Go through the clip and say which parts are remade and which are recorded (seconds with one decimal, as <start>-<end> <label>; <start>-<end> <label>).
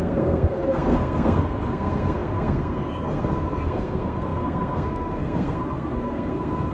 0.0-6.7 remade